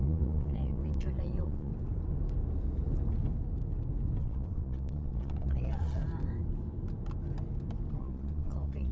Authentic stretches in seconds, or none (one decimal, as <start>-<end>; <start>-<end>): 1.7-4.2; 6.0-8.0